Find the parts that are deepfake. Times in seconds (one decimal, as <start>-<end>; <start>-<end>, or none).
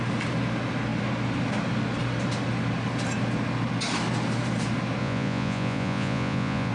5.0-6.7